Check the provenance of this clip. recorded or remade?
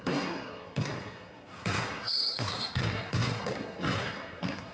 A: remade